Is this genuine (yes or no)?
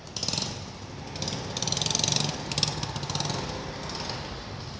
yes